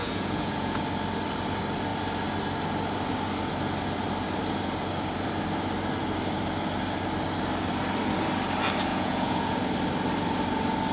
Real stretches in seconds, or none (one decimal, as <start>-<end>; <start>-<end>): 0.8-8.9; 9.6-10.9